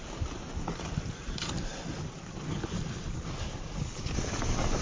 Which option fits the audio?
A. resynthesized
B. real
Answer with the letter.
B